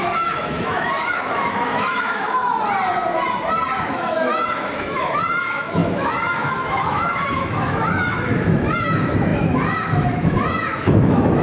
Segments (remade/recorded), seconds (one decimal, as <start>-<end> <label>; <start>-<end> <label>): 0.0-2.4 remade; 2.4-3.8 recorded; 3.8-11.4 remade